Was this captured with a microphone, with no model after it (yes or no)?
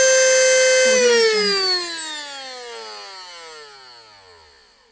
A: yes